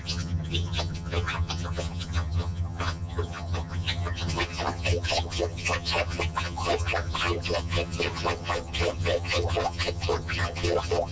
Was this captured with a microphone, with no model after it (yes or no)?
no